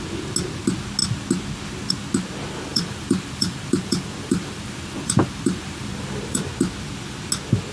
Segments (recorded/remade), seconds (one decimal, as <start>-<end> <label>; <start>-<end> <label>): 0.0-2.7 recorded; 2.7-6.5 remade; 6.5-7.7 recorded